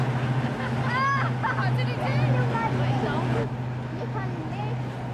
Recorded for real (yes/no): yes